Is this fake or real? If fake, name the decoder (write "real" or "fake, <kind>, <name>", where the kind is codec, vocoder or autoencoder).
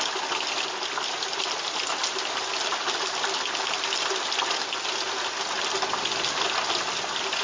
real